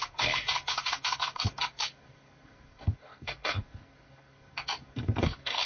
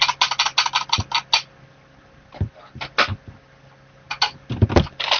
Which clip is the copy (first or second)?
first